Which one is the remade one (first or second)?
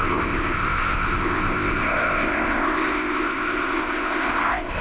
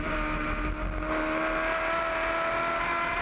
first